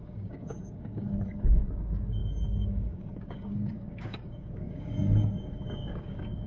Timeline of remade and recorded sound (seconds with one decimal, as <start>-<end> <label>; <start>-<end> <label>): 0.0-6.5 remade